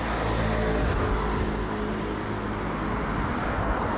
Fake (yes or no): no